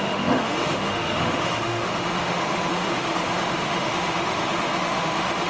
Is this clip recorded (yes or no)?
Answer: no